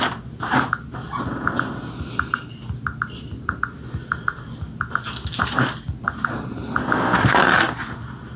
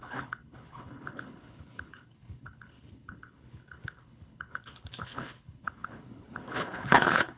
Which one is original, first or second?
first